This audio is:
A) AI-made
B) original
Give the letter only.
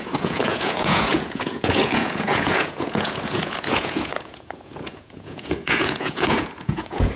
A